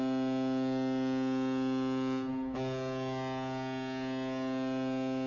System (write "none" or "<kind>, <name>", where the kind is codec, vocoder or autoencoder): none